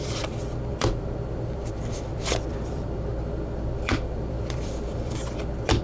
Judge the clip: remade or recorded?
remade